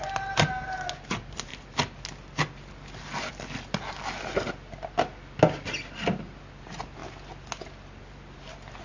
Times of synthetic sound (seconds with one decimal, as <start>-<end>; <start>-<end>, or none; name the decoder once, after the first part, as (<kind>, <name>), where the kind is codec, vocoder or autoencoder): none